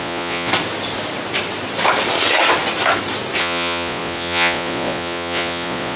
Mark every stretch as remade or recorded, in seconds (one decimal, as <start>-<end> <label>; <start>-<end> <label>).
0.0-0.5 remade; 0.5-3.4 recorded; 3.4-6.0 remade